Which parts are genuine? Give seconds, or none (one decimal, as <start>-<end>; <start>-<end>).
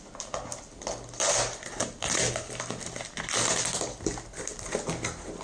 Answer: 0.0-5.4